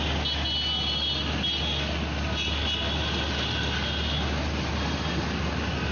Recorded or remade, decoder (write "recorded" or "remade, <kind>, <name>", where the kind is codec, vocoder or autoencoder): recorded